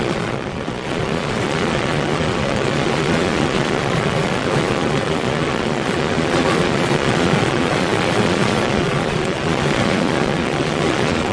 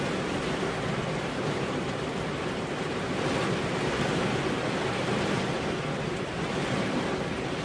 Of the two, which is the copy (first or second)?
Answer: first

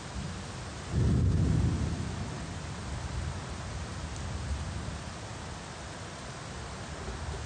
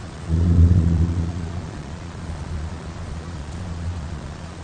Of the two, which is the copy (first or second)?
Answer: second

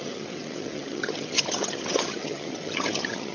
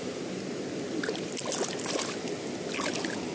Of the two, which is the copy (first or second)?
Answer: first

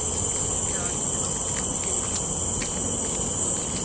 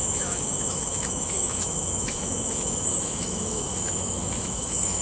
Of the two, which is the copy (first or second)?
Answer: second